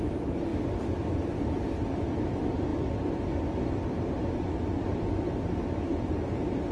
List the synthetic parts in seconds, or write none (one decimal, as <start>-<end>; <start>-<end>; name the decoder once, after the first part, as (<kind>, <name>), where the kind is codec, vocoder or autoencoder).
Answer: none